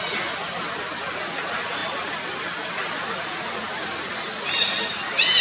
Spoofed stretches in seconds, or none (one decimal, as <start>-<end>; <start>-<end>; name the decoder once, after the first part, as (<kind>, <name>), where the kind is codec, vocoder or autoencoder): none